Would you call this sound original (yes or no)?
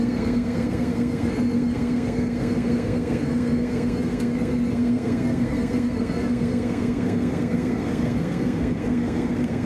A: no